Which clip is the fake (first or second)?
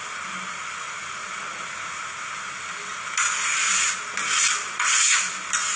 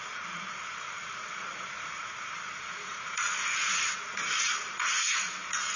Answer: second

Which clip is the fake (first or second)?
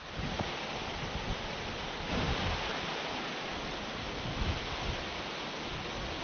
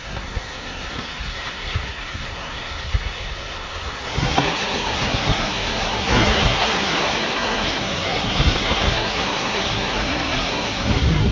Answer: second